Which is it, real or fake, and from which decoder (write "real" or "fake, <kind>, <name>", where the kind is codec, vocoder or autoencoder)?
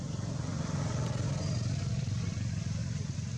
real